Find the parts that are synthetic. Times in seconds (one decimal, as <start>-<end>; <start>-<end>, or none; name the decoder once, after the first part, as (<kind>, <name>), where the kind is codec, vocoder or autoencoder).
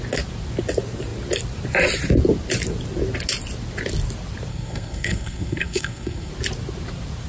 4.5-6.3 (codec, SNAC)